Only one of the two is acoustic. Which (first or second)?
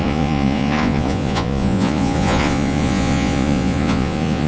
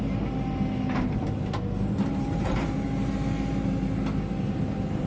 second